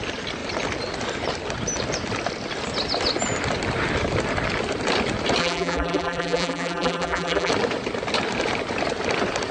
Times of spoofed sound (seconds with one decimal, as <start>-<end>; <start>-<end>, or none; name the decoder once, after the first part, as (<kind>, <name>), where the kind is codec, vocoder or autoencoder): 5.4-7.5 (vocoder, BigVGAN v2)